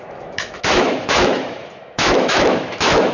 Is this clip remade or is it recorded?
remade